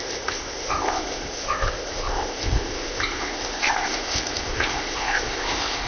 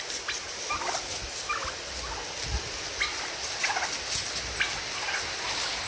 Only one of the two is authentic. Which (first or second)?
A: second